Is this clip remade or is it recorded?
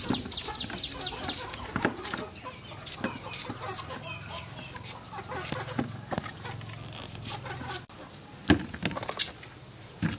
recorded